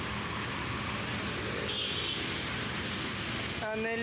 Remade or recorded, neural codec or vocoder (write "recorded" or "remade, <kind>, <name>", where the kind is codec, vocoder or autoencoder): recorded